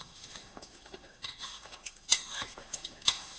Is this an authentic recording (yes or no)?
no